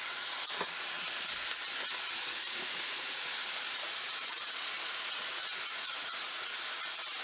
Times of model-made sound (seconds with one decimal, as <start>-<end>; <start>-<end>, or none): 2.3-6.6